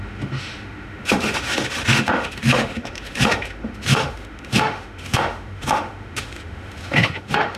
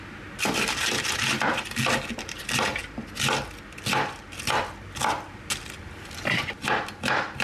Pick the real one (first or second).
second